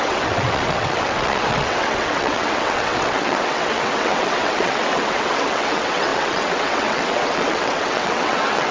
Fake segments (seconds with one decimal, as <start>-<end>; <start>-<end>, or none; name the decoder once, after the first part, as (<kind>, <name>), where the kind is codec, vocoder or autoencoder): 0.0-8.7 (vocoder, WaveNeXt)